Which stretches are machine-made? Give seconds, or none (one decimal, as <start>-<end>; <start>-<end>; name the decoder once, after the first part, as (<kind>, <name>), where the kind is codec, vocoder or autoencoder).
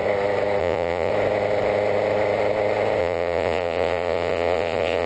0.6-1.1 (vocoder, Vocos); 3.0-5.1